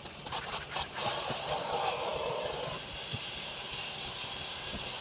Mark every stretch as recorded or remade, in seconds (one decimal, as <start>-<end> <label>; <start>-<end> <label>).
0.0-5.0 recorded